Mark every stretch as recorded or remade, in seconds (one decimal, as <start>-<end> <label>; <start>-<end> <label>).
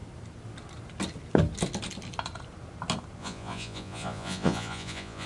0.0-3.2 recorded; 3.2-5.3 remade